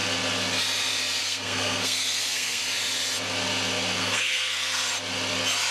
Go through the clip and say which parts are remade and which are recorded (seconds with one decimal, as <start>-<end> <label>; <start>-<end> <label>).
0.0-1.2 recorded; 1.2-2.6 remade; 2.6-4.0 recorded; 4.0-4.9 remade; 4.9-5.7 recorded